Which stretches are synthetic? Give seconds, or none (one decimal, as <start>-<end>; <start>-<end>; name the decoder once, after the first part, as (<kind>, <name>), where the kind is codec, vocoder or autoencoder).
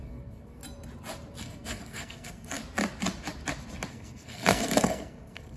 0.0-0.6 (codec, SNAC); 1.4-2.6; 3.9-5.6